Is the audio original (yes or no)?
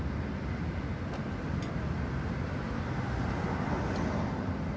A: yes